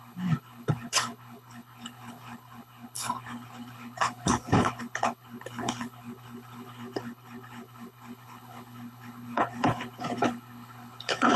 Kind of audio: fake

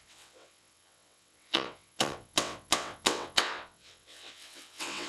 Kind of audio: fake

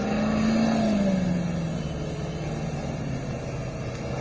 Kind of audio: real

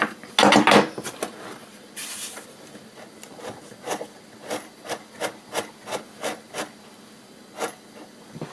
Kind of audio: real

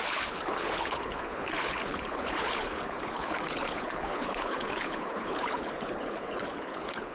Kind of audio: fake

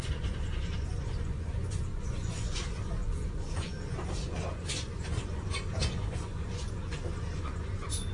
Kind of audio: fake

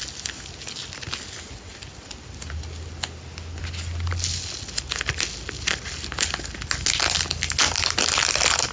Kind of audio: real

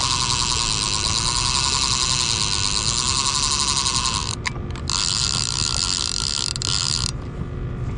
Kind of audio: real